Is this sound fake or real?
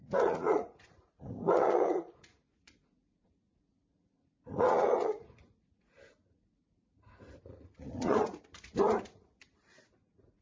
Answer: fake